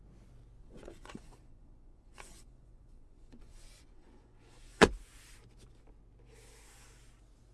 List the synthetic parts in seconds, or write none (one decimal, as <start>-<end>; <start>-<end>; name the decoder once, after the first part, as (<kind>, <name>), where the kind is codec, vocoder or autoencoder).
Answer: 0.6-4.9 (vocoder, Vocos)